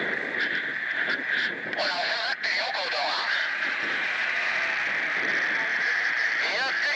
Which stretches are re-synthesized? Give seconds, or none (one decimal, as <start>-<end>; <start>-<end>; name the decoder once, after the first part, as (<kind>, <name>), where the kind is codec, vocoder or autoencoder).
0.7-4.6 (vocoder, Vocos); 5.7-6.3